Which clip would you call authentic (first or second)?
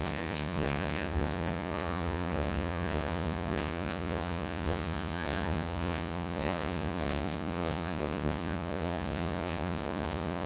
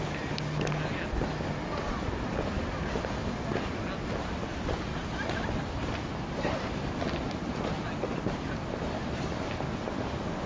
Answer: second